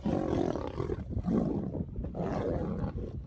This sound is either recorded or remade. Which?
recorded